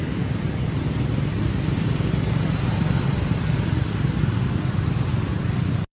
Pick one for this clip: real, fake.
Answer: fake